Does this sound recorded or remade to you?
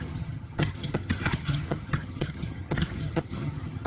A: remade